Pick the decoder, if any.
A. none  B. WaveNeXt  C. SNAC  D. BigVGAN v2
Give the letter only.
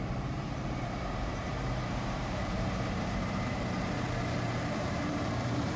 D